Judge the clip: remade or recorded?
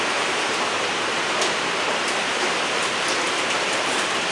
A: recorded